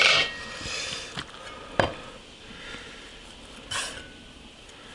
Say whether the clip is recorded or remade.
recorded